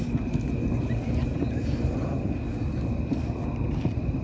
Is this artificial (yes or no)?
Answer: no